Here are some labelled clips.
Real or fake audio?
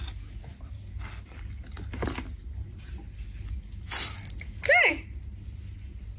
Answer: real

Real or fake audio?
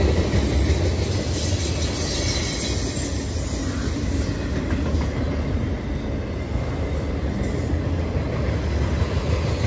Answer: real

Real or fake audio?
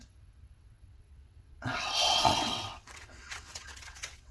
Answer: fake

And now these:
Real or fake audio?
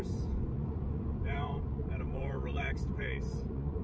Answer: fake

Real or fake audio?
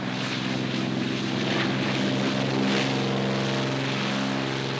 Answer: real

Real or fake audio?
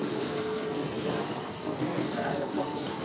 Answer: fake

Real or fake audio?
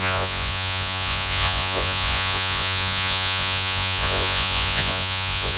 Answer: fake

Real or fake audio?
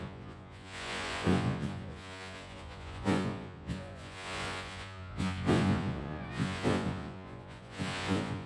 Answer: fake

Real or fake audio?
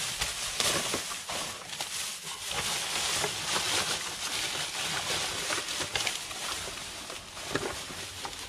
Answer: real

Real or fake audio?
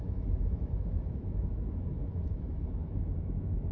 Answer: fake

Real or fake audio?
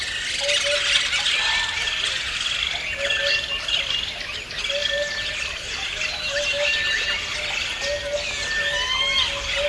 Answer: real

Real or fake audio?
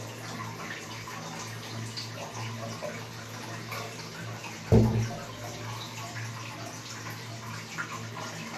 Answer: real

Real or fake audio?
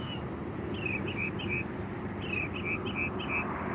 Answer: real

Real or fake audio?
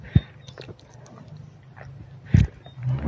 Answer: real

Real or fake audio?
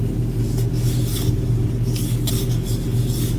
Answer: real